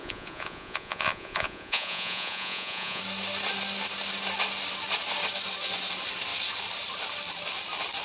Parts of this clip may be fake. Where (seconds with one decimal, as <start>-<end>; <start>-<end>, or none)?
0.0-3.0